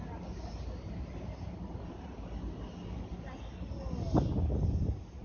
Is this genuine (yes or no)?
yes